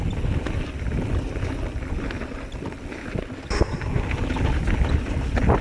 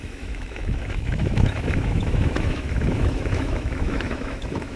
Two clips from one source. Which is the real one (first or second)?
first